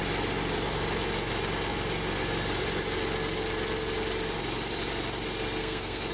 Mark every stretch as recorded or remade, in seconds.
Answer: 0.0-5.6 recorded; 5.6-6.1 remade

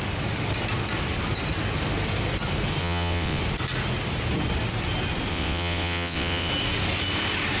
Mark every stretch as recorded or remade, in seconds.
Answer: 0.0-2.8 recorded; 2.8-3.4 remade; 3.4-5.3 recorded; 5.3-6.5 remade; 6.5-7.6 recorded

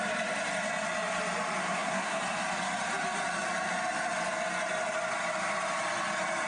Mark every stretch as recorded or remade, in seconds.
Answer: 0.0-1.6 recorded; 1.6-2.2 remade; 2.2-6.5 recorded